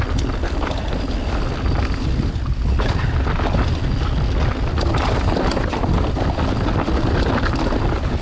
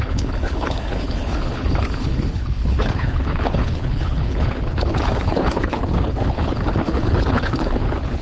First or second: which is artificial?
second